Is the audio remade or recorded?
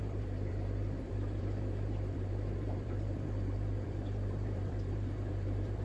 remade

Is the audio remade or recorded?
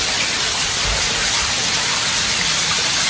remade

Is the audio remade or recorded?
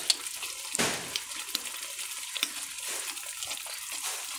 recorded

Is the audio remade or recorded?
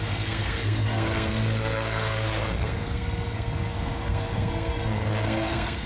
remade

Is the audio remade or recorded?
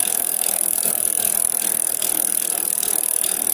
remade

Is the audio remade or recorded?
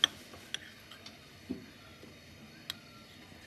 recorded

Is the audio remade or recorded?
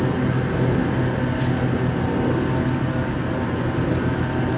recorded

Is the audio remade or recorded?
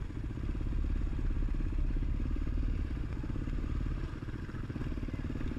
remade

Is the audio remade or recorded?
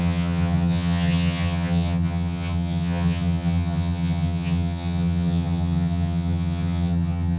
remade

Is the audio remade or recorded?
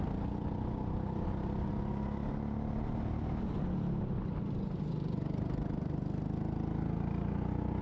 recorded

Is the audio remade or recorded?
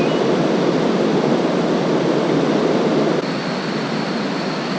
recorded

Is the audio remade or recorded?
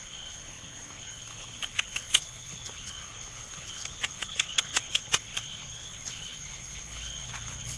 remade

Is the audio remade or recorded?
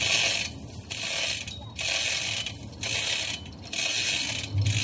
recorded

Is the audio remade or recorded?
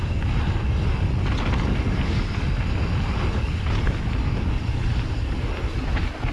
recorded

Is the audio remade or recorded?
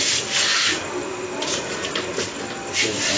recorded